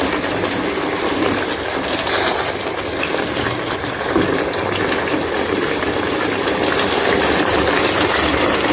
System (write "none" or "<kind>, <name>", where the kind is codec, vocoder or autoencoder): none